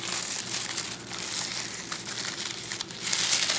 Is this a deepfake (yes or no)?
no